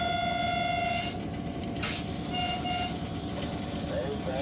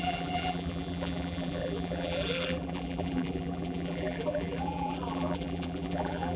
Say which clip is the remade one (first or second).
second